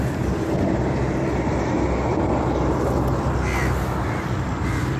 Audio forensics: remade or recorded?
recorded